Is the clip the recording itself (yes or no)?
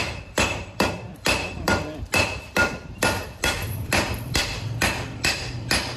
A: no